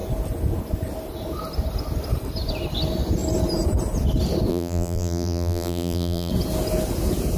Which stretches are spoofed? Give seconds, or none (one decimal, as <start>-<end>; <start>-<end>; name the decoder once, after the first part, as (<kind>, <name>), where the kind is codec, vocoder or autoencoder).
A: 4.5-6.3 (vocoder, BigVGAN v2)